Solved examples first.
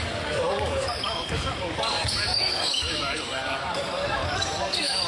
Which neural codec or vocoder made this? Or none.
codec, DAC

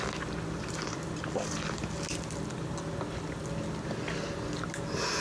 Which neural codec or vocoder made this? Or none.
none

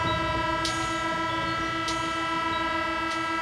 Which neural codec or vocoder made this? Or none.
none